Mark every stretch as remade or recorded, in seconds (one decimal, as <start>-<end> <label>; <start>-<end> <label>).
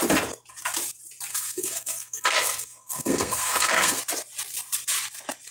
0.0-1.3 recorded; 1.3-4.0 remade; 4.0-5.5 recorded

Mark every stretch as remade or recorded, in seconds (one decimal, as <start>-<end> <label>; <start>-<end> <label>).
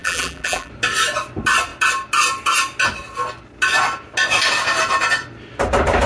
0.0-0.7 remade; 0.7-6.1 recorded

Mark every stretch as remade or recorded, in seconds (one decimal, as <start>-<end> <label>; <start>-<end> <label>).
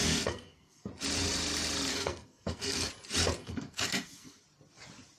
0.0-0.9 remade; 0.9-1.9 recorded; 1.9-2.9 remade; 2.9-3.4 recorded; 3.4-4.4 remade; 4.4-5.2 recorded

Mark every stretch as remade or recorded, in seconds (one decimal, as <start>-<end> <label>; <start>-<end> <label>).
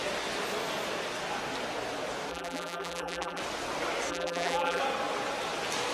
0.0-2.3 recorded; 2.3-3.4 remade; 3.4-4.1 recorded; 4.1-4.8 remade; 4.8-5.9 recorded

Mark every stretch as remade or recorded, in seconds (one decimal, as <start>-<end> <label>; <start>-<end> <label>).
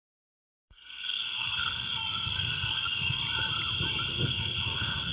0.0-3.2 remade; 3.2-4.1 recorded; 4.1-5.1 remade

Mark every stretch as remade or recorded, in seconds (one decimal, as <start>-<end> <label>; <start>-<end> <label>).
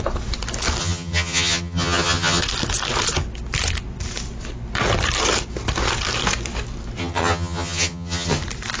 0.0-0.8 recorded; 0.8-2.4 remade; 2.4-7.0 recorded; 7.0-8.4 remade; 8.4-8.8 recorded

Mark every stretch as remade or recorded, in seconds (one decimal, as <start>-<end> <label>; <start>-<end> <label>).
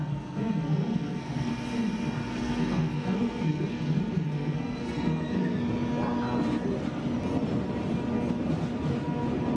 0.0-1.5 remade; 1.5-2.3 recorded; 2.3-5.6 remade; 5.6-9.6 recorded